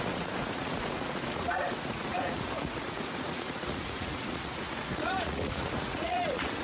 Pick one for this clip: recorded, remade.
remade